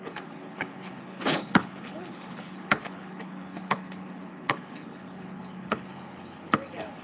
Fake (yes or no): yes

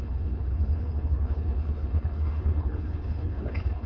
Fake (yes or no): yes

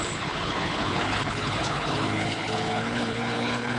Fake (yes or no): yes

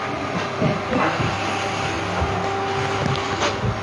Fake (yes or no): no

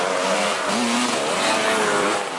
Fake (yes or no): no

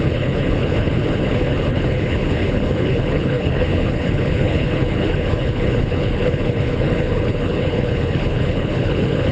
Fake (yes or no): yes